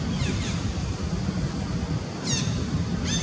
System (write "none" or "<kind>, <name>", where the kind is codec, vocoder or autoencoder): none